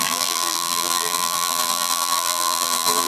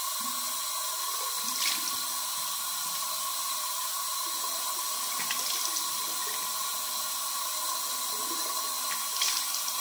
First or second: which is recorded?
second